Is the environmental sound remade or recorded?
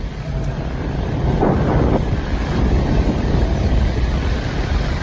recorded